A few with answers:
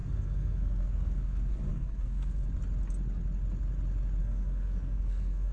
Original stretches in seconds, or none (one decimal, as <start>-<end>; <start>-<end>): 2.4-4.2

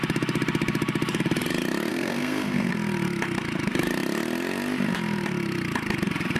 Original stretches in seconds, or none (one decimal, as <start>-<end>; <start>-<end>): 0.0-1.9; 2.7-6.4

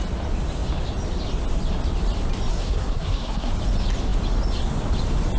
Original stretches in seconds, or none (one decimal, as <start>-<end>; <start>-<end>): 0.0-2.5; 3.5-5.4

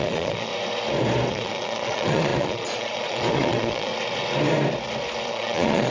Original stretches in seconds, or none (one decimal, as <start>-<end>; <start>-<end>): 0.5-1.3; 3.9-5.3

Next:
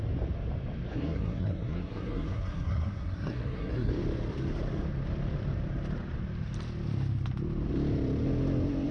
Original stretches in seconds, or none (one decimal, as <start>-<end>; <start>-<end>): 0.0-0.9; 3.9-8.9